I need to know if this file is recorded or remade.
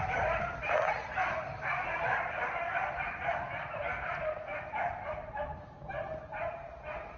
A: recorded